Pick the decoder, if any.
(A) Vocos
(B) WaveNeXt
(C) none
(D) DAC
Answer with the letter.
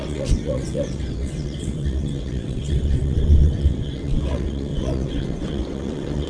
B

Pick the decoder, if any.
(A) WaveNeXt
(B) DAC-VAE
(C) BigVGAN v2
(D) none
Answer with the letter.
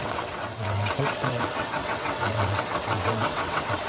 A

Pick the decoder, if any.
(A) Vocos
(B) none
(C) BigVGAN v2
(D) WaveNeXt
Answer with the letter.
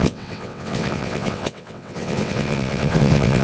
D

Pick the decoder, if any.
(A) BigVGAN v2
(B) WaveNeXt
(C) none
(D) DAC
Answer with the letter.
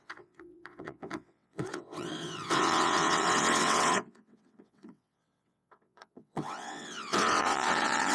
B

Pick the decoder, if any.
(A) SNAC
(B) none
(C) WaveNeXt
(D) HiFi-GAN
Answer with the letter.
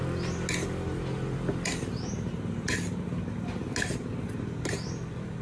B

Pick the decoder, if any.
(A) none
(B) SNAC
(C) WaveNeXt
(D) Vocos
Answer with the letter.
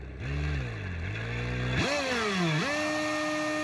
A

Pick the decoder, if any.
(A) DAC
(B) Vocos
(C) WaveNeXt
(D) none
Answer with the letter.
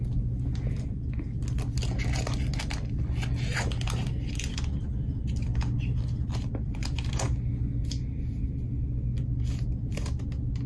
D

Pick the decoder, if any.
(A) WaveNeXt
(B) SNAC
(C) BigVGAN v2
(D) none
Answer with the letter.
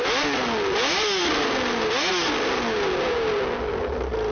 D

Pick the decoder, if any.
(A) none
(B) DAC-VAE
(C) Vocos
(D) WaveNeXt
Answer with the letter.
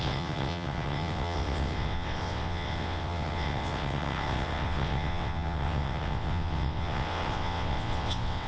D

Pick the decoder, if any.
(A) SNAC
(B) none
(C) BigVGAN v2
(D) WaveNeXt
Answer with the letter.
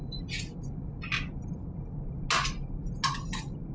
B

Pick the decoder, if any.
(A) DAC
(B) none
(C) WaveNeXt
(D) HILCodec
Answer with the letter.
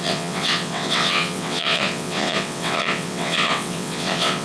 C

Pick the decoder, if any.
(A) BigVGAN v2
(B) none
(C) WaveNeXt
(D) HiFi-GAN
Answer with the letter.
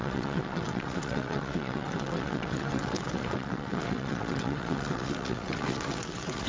C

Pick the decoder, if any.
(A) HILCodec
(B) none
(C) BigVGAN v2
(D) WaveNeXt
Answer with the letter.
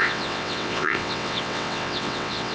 D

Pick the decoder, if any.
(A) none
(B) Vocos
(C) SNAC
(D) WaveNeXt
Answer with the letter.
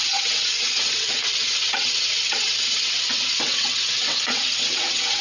D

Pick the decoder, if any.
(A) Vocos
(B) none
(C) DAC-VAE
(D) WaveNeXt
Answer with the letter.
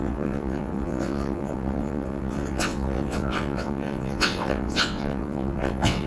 D